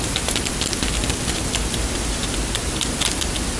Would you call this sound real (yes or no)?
yes